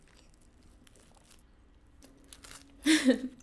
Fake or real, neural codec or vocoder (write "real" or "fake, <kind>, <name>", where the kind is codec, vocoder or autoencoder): real